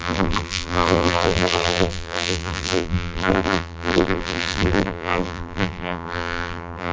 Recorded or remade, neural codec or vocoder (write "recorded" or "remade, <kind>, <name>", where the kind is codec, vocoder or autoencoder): remade, vocoder, BigVGAN v2